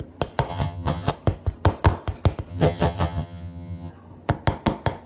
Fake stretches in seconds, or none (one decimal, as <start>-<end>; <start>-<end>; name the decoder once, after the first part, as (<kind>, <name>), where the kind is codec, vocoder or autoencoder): 0.5-1.1 (vocoder, HiFi-GAN); 2.5-3.9